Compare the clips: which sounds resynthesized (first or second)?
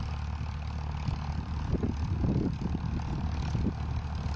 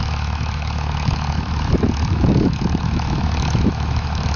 second